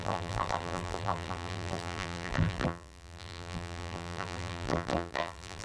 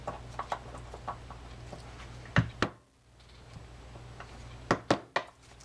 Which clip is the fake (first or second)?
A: first